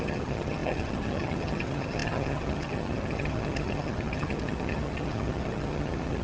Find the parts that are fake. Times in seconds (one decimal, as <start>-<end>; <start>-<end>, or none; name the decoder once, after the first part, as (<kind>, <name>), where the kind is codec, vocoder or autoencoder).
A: 0.0-6.2 (vocoder, HiFi-GAN)